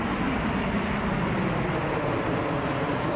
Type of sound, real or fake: real